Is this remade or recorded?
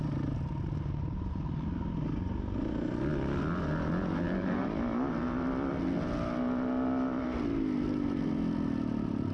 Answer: recorded